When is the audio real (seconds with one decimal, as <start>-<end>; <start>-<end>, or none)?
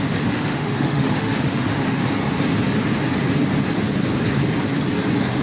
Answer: 2.0-5.4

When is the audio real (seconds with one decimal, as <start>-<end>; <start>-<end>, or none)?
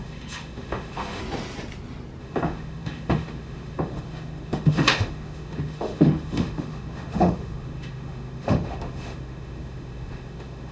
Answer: 1.2-2.2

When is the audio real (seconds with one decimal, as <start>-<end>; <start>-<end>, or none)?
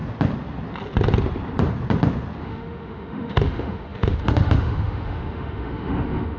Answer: 0.0-2.4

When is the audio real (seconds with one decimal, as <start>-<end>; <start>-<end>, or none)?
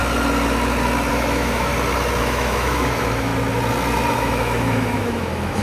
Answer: 0.0-1.1; 1.7-2.2; 3.3-4.2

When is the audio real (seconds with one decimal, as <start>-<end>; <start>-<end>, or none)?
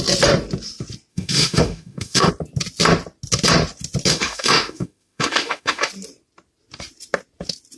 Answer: 0.0-1.1; 2.3-4.1; 5.9-7.8